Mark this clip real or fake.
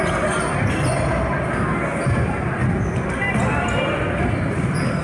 real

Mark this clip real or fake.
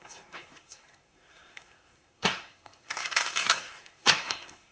fake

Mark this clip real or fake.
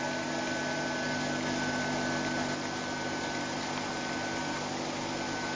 real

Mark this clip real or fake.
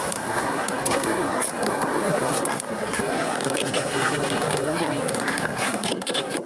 fake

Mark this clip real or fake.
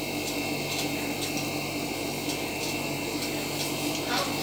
real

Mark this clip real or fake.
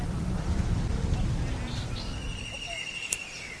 real